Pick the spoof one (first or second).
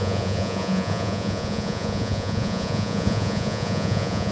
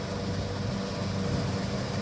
first